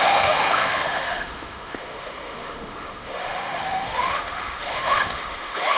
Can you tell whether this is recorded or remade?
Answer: remade